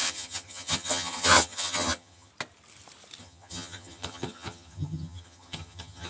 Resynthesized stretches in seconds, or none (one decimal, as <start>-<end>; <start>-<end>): 0.0-2.3; 3.2-6.1